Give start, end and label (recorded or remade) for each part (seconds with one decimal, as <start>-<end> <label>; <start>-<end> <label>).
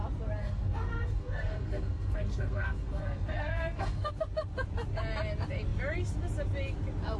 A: 0.0-0.4 recorded; 0.4-4.1 remade; 4.1-7.2 recorded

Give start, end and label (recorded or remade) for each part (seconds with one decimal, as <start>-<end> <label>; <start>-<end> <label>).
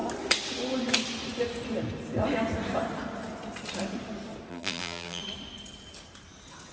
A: 0.0-4.5 recorded; 4.5-5.2 remade; 5.2-6.7 recorded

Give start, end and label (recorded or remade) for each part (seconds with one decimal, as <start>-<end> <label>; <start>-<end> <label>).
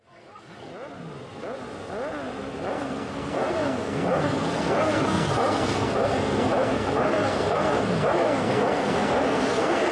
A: 0.0-0.7 remade; 0.7-2.7 recorded; 2.7-9.9 remade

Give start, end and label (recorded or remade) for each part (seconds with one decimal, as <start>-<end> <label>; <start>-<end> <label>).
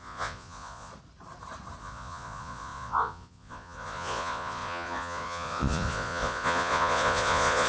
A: 0.0-0.9 remade; 0.9-1.8 recorded; 1.8-7.7 remade